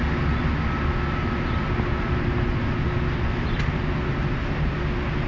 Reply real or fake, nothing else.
real